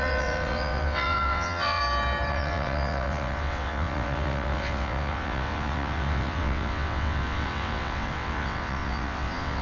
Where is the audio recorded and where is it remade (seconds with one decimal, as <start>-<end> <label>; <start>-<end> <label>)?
0.0-1.8 remade; 1.8-2.3 recorded; 2.3-9.6 remade